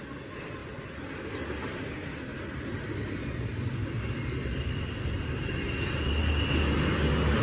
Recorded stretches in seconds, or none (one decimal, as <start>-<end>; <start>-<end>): 0.0-7.4